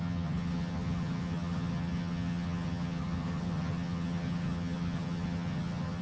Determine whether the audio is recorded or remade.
remade